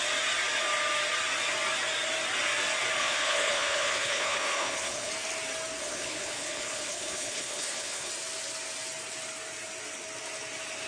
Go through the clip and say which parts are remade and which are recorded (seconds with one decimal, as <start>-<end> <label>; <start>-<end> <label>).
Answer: 0.0-3.0 recorded; 3.0-5.1 remade; 5.1-5.8 recorded; 5.8-8.1 remade; 8.1-10.9 recorded